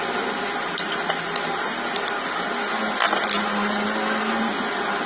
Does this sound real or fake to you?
real